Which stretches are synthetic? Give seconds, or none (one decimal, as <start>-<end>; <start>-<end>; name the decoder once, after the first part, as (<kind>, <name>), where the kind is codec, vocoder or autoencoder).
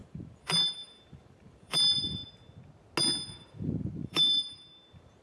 0.0-2.2 (vocoder, BigVGAN v2); 3.3-5.2